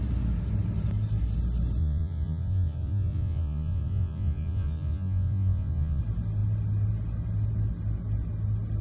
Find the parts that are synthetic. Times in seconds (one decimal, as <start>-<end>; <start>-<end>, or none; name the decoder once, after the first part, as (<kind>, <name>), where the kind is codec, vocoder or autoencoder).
1.8-6.0 (vocoder, Vocos)